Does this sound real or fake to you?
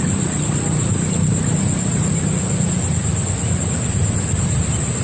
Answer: fake